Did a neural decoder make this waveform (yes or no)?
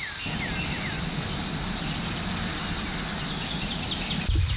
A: no